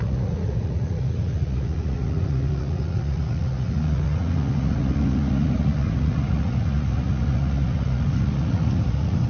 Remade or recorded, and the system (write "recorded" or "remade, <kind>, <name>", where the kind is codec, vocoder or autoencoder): remade, vocoder, Vocos